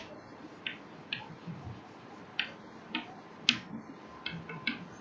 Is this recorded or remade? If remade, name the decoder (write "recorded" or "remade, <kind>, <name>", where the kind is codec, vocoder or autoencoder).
recorded